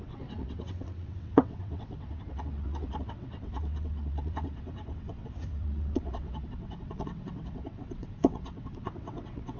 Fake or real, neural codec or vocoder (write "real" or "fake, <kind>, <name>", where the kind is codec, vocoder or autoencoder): fake, vocoder, WaveNeXt